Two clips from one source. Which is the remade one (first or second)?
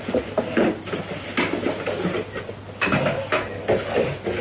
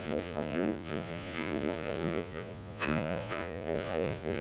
second